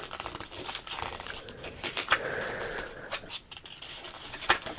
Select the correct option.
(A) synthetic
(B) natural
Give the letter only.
B